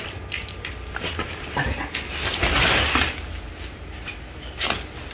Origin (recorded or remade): recorded